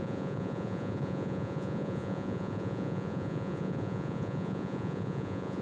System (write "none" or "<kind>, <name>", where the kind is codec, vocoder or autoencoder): vocoder, Vocos